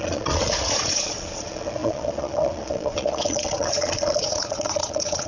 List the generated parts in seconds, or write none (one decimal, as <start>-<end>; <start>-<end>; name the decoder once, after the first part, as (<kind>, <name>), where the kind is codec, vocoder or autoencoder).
0.0-5.3 (vocoder, Vocos)